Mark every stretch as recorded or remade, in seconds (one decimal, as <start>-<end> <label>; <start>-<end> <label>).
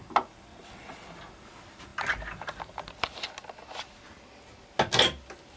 0.0-0.5 recorded; 0.5-1.1 remade; 1.1-5.6 recorded